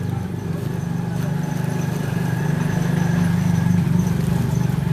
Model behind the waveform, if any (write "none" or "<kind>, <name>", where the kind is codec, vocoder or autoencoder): none